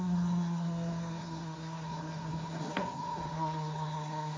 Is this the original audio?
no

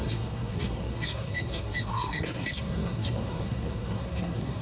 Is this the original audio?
no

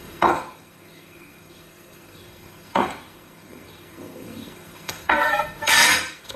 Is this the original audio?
no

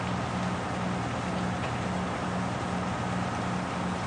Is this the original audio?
yes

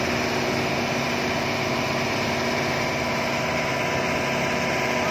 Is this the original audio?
yes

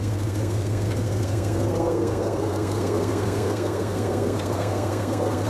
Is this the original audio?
no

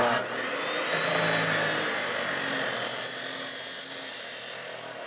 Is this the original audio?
yes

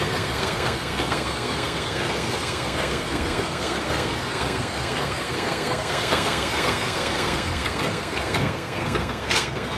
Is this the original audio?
no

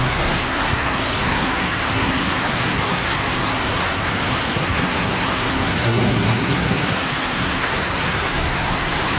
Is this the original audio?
no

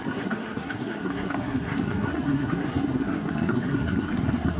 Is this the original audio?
no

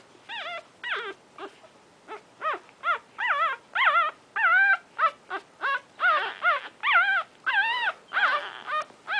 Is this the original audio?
yes